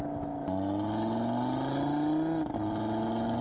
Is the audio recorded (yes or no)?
yes